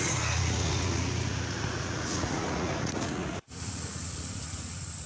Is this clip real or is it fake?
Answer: fake